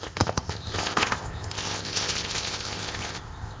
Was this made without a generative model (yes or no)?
no